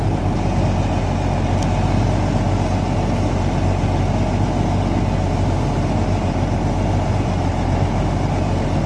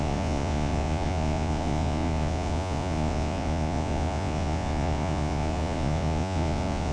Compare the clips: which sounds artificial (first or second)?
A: second